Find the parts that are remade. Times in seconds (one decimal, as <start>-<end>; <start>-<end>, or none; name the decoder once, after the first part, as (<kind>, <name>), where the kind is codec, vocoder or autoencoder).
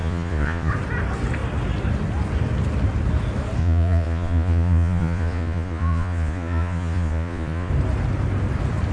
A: 0.0-0.7 (vocoder, Vocos); 3.6-7.7